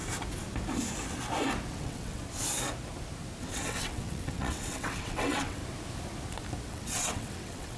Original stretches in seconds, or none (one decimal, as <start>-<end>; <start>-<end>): 0.0-1.7; 2.2-3.4; 5.6-6.7